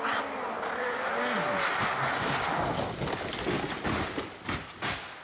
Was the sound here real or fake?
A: real